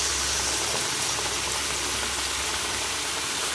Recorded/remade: recorded